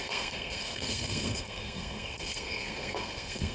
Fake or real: fake